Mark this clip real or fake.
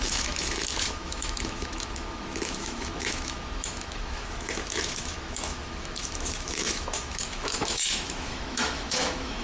fake